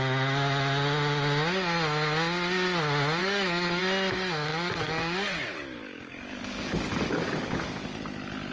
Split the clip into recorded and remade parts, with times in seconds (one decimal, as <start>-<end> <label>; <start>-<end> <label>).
0.0-3.2 recorded; 3.2-3.8 remade; 3.8-4.5 recorded; 4.5-8.0 remade; 8.0-8.5 recorded